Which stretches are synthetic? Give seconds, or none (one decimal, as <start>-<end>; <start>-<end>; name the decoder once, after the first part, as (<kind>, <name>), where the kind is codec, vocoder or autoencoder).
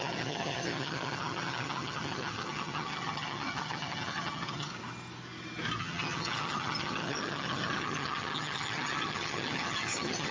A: 0.0-4.7 (vocoder, HiFi-GAN); 5.8-10.3